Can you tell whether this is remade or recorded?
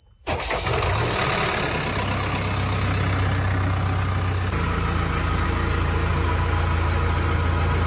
recorded